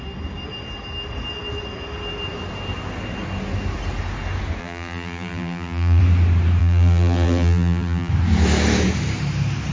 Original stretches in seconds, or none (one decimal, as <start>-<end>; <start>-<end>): 0.0-4.6; 6.0-6.6; 8.1-9.7

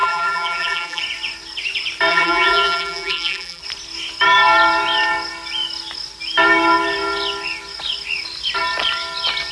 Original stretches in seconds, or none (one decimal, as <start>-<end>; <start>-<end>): 1.0-2.1; 3.6-9.5